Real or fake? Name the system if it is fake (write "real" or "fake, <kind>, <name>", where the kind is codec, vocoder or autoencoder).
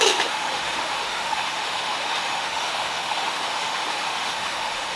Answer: fake, autoencoder, DAC-VAE